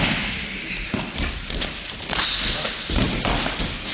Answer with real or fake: real